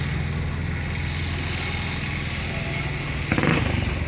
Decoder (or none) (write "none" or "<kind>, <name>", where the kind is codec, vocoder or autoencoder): none